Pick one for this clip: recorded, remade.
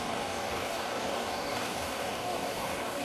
remade